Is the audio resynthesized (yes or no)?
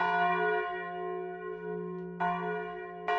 no